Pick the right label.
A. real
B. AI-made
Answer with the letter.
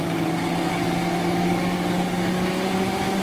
B